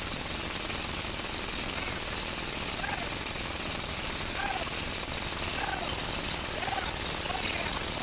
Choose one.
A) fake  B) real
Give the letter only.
B